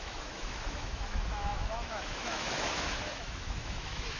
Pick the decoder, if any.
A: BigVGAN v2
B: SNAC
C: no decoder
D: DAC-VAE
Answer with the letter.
D